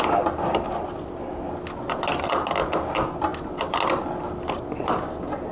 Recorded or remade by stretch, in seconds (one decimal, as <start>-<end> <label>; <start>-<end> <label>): 0.0-5.5 recorded